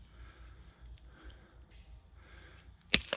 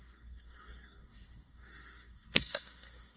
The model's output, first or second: second